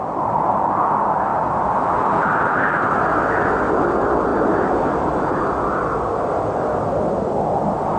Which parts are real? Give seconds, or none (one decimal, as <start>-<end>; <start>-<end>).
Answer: 0.0-1.3; 2.8-8.0